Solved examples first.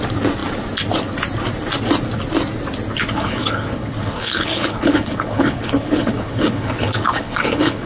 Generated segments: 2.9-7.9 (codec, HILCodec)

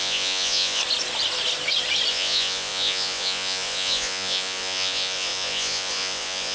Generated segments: 0.0-0.8 (vocoder, Vocos); 2.1-6.5

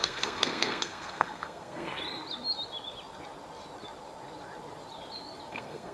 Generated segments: 0.0-2.0 (codec, SNAC); 5.5-5.9

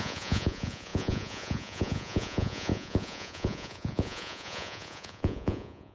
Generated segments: 0.0-5.9 (vocoder, Vocos)

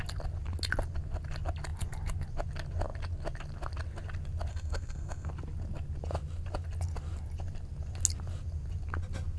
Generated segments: 4.5-5.3 (codec, SNAC)

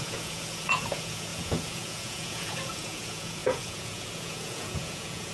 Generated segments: 0.0-5.3 (vocoder, Vocos)

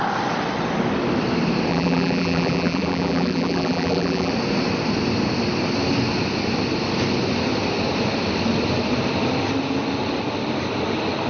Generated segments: 1.7-4.3 (vocoder, BigVGAN v2)

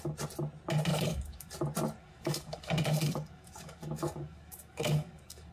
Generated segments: 0.9-1.5 (codec, DAC); 2.0-5.5